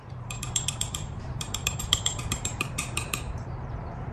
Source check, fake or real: fake